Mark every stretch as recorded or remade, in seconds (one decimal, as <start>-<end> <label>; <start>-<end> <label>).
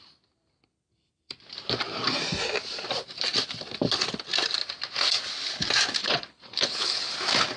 0.0-6.0 recorded; 6.0-7.1 remade; 7.1-7.6 recorded